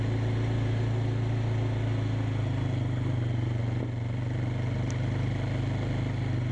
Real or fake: real